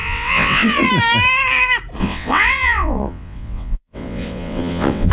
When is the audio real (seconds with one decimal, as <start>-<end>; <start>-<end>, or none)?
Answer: 0.9-2.0

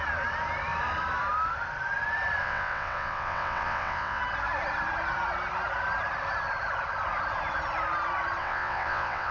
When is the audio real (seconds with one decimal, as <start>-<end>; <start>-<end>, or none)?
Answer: 0.0-2.4; 4.2-8.4

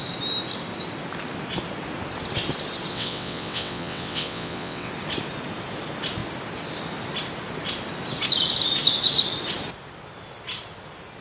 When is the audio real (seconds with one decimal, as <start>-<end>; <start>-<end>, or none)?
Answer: 0.0-2.9; 4.9-11.2

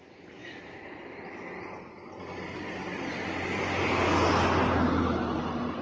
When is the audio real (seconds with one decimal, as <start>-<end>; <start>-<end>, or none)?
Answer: 0.0-5.8

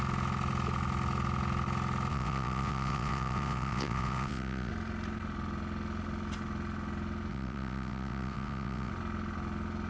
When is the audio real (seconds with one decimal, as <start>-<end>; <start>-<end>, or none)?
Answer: 0.0-2.1; 4.7-7.3; 8.9-9.9

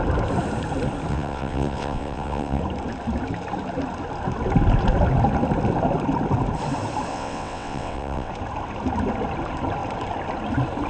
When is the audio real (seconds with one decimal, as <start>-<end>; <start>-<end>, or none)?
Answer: 0.0-1.1; 2.6-7.1; 8.3-10.9

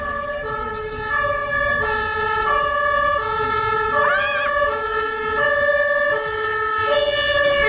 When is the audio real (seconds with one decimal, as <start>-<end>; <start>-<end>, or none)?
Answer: 0.0-7.7